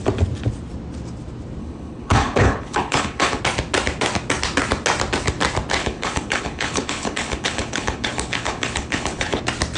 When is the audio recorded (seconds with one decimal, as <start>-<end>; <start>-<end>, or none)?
0.0-1.6; 3.4-5.8; 9.4-9.8